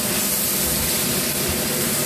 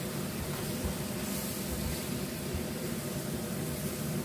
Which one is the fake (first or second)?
second